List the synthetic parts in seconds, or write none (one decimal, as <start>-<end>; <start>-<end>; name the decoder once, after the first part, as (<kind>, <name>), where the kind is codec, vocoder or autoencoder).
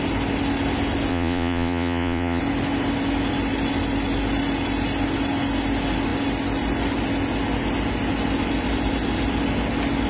1.1-2.4 (vocoder, Vocos)